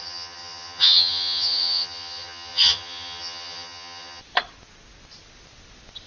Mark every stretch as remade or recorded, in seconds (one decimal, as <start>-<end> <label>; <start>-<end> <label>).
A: 0.0-4.2 remade; 4.2-6.1 recorded